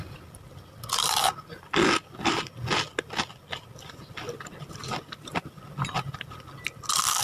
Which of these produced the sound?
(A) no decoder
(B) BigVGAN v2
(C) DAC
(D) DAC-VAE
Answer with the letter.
A